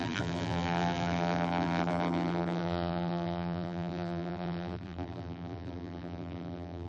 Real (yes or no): no